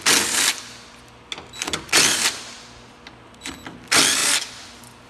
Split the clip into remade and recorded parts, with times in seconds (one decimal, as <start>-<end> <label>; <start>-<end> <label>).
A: 0.0-5.1 recorded